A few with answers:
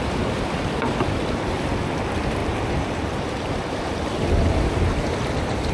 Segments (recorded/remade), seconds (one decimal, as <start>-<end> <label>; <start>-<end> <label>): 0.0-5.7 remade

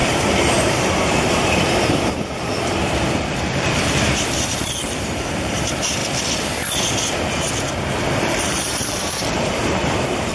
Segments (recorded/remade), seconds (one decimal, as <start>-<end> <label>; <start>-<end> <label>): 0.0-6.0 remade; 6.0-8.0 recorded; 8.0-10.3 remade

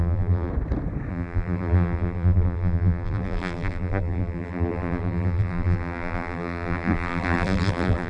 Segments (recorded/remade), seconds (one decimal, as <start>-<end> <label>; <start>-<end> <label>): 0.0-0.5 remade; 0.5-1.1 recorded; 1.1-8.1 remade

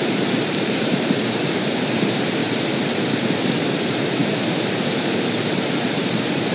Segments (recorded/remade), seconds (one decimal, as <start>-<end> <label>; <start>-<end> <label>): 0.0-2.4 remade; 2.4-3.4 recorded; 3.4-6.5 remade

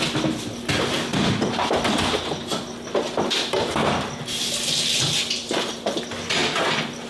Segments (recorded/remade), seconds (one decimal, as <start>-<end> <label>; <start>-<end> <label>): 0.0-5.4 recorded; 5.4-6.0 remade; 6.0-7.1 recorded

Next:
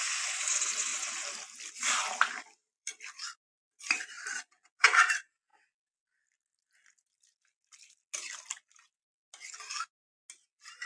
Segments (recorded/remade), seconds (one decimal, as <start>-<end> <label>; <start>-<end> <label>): 0.0-2.1 recorded; 2.1-3.1 remade; 3.1-10.9 recorded

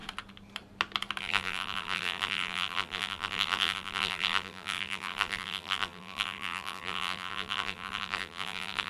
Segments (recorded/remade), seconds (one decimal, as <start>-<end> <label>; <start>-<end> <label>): 0.0-1.2 recorded; 1.2-8.9 remade

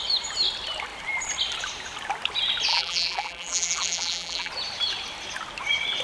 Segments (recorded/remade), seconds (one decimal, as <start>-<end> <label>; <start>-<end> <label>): 0.0-2.7 recorded; 2.7-4.5 remade; 4.5-6.0 recorded